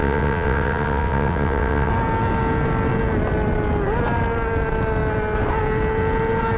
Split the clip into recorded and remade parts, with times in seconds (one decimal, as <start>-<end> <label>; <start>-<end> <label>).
0.0-1.9 remade; 1.9-6.6 recorded